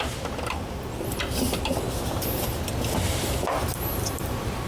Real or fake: real